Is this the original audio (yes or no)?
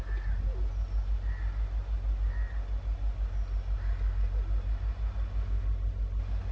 yes